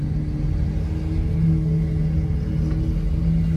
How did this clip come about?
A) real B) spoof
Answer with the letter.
A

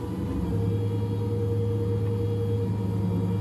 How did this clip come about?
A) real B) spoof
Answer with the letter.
A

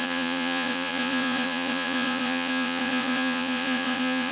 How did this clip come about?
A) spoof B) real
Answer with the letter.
A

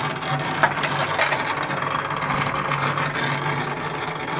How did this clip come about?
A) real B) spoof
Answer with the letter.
A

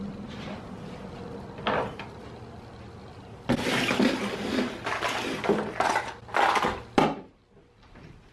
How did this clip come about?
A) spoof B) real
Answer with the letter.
B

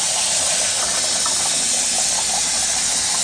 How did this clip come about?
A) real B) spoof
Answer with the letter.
A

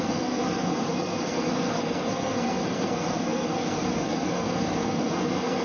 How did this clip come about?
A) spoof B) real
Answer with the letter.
A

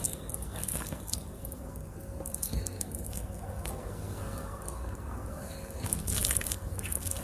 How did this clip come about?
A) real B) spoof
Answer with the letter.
B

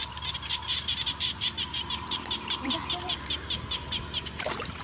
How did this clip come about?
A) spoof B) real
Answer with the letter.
A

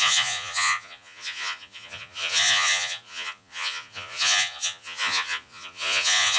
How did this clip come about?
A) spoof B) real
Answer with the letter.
A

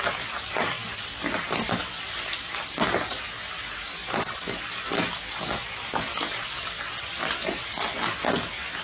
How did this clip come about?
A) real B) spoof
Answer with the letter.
A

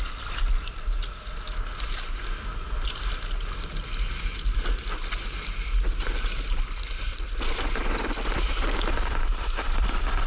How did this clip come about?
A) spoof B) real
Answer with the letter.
B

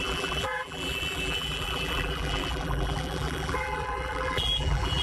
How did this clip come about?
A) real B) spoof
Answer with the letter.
B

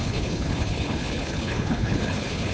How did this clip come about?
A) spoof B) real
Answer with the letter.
A